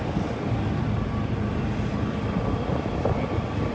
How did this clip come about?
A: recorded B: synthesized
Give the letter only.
A